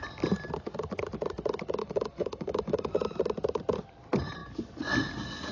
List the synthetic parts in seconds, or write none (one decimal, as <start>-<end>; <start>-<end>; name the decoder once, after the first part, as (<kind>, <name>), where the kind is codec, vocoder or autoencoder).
1.8-2.9 (codec, DAC)